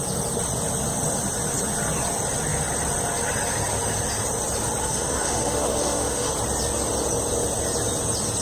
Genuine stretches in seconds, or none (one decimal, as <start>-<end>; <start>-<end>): 0.0-4.8; 6.3-8.4